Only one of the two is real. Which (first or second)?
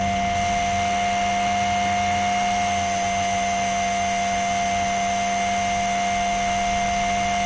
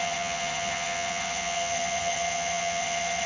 first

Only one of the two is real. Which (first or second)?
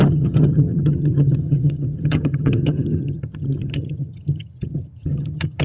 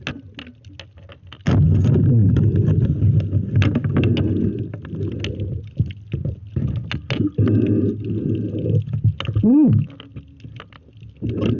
second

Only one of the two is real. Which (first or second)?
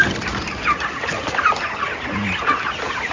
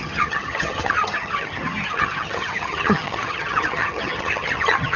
first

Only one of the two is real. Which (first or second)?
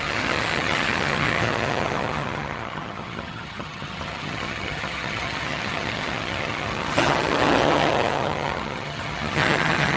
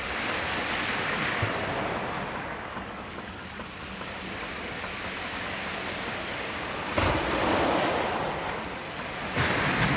second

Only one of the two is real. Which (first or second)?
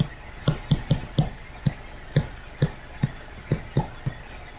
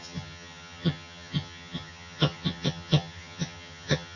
first